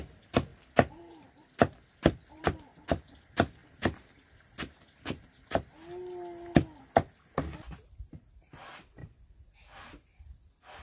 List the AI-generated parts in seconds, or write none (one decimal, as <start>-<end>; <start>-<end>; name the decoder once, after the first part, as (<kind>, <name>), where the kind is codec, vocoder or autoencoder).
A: none